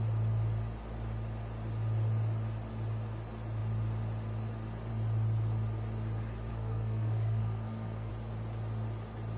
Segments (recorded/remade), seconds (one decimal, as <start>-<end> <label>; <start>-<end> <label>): 0.0-6.5 recorded; 6.5-8.1 remade; 8.1-9.4 recorded